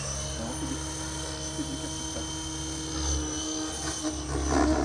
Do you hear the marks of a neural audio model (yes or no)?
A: no